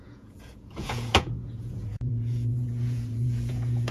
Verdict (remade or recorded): remade